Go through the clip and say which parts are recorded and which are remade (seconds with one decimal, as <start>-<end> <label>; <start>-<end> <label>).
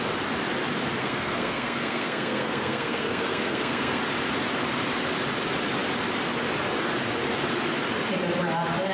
0.0-1.0 recorded; 1.0-4.0 remade; 4.0-8.9 recorded